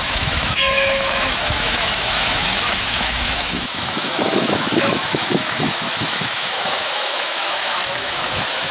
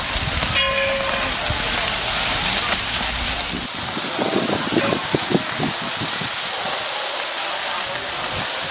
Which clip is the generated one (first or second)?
first